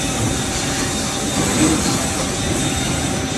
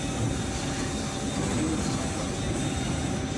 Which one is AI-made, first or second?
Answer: first